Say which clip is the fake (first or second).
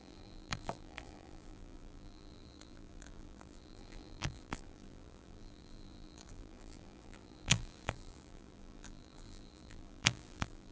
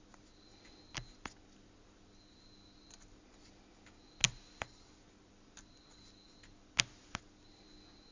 first